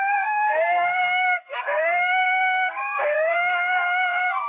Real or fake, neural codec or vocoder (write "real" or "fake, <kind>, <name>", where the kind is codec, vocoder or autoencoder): fake, codec, SNAC